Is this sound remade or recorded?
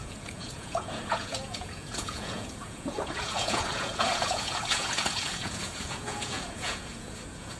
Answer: remade